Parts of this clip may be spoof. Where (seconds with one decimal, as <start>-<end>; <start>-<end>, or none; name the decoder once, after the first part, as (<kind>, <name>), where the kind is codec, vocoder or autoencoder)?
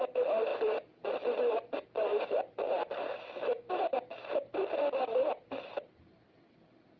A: 0.5-1.1 (vocoder, BigVGAN v2); 2.1-6.0